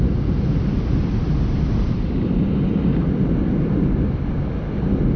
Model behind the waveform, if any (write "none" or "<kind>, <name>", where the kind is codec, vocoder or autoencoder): none